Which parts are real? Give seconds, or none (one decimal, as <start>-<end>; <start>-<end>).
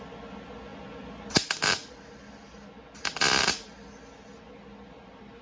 0.0-5.4